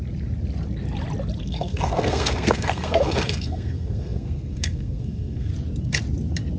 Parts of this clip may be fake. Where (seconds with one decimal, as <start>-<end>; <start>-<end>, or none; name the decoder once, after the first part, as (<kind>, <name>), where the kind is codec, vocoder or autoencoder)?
1.4-5.5 (codec, SNAC)